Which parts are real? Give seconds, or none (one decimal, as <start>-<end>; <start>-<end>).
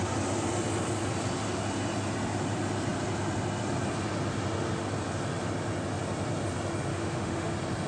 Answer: 0.0-6.9; 7.5-7.9